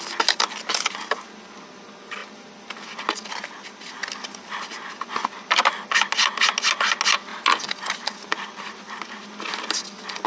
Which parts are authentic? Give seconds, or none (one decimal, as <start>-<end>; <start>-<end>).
0.0-10.3

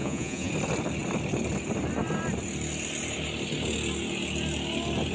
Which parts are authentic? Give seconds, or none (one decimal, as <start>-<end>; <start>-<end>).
0.5-5.1